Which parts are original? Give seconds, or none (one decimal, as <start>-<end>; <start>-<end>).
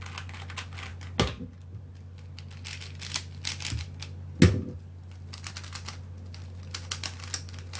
0.0-7.8